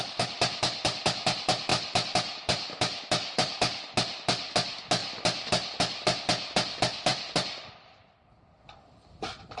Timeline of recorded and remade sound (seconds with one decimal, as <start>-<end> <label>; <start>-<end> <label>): 0.0-1.7 recorded; 1.7-3.6 remade; 3.6-5.0 recorded; 5.0-6.2 remade; 6.2-7.1 recorded; 7.1-8.3 remade; 8.3-9.6 recorded